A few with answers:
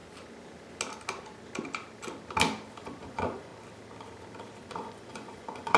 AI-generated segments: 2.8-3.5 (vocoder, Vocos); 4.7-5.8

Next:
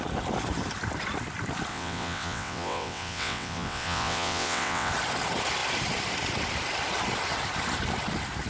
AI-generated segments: 1.7-4.9 (vocoder, WaveNeXt)

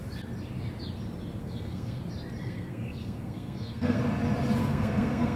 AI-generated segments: 1.4-2.0 (codec, SNAC); 2.4-4.0; 4.6-5.4

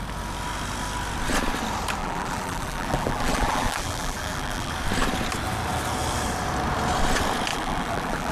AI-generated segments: 2.0-4.7 (vocoder, BigVGAN v2); 7.5-8.3

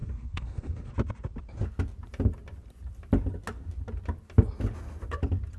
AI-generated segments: 0.0-0.9 (codec, SNAC)

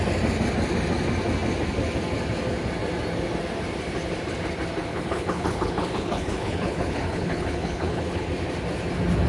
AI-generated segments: 4.9-8.3 (codec, HILCodec)

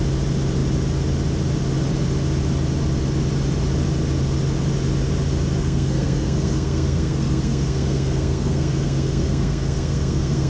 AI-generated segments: 5.6-10.5 (codec, SNAC)